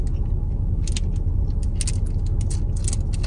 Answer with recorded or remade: recorded